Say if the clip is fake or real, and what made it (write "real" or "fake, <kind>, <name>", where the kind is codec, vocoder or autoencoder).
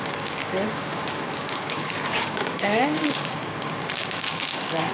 fake, codec, DAC